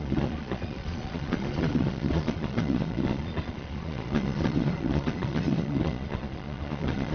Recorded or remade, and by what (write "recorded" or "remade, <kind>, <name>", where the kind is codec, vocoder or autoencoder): remade, vocoder, Vocos